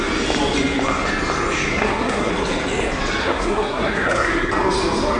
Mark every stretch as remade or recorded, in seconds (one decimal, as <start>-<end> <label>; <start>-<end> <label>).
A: 0.0-1.7 recorded; 1.7-2.3 remade; 2.3-3.2 recorded; 3.2-4.5 remade; 4.5-5.2 recorded

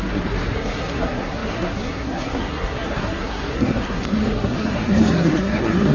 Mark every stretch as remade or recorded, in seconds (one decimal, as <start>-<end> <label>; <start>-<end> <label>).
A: 0.0-5.9 remade

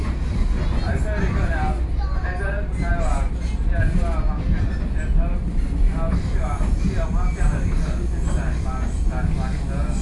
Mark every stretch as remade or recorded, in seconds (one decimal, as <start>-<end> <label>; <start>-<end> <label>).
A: 0.0-10.0 recorded

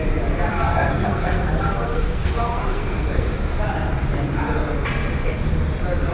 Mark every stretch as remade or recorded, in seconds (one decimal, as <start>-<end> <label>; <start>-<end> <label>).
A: 0.0-0.5 recorded; 0.5-3.3 remade; 3.3-6.1 recorded